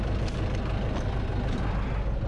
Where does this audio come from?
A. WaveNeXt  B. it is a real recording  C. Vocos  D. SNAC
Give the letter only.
B